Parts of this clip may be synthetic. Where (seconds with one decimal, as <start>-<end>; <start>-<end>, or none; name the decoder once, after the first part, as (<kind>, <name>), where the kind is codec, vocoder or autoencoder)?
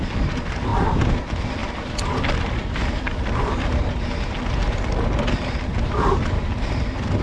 none